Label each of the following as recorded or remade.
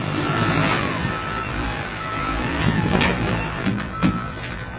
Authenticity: remade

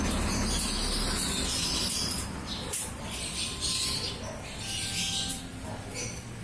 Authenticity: recorded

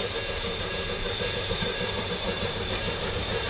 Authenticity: remade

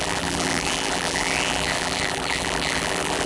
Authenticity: remade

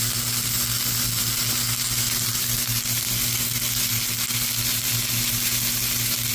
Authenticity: recorded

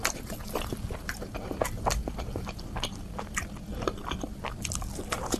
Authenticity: remade